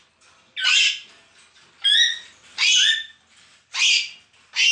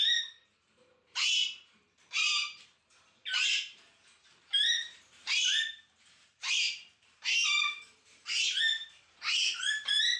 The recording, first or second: first